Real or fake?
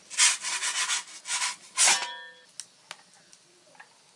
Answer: real